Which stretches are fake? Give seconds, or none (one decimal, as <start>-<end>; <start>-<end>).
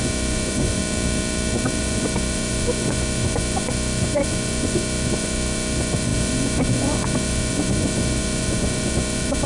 0.0-0.8; 1.8-9.5